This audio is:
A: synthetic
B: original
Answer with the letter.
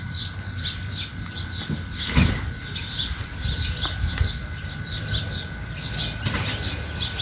B